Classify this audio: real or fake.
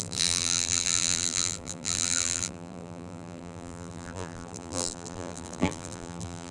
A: fake